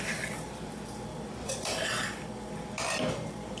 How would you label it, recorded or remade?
remade